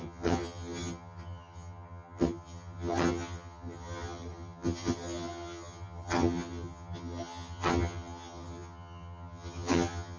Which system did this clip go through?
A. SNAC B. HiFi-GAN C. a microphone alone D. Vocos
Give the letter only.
B